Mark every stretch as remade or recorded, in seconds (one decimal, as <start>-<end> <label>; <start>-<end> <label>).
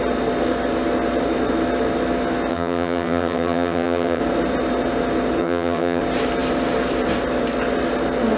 0.0-2.5 recorded; 2.5-4.2 remade; 4.2-5.4 recorded; 5.4-6.0 remade; 6.0-8.4 recorded